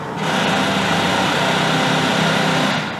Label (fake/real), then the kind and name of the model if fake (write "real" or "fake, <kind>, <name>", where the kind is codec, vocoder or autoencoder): real